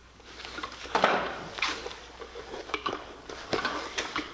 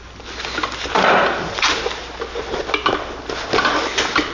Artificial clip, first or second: first